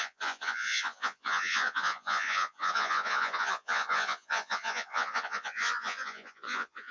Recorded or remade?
remade